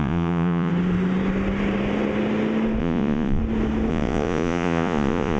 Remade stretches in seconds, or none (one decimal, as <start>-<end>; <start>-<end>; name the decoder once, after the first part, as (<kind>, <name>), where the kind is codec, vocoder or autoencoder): 0.0-0.7 (vocoder, Vocos); 2.8-3.4; 3.9-5.4